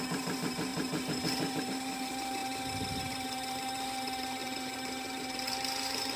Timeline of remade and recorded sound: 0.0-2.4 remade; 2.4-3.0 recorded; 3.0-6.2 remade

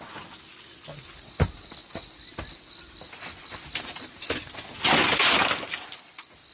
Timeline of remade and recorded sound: 0.0-6.5 recorded

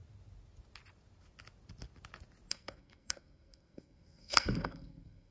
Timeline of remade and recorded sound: 0.0-2.5 recorded; 2.5-5.3 remade

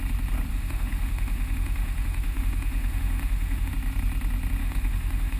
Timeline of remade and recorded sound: 0.0-0.5 recorded; 0.5-3.7 remade; 3.7-4.6 recorded; 4.6-5.4 remade

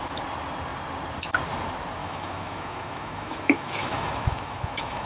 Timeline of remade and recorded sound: 0.0-2.0 recorded; 2.0-5.1 remade

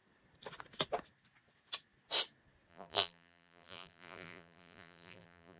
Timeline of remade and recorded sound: 0.0-2.7 recorded; 2.7-5.6 remade

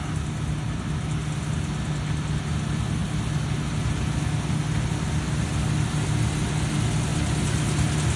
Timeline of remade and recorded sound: 0.0-8.2 recorded